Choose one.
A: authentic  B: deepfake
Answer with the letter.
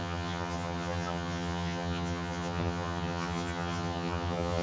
B